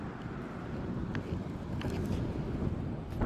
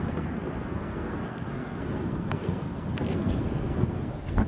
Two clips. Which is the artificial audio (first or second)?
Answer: second